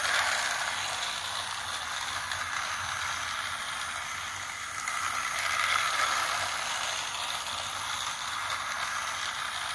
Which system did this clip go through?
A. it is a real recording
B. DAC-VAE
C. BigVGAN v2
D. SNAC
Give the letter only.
A